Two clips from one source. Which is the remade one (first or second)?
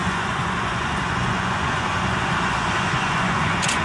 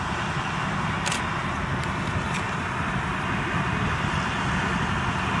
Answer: first